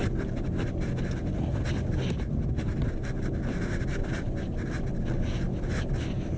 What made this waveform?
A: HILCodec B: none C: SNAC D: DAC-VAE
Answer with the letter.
B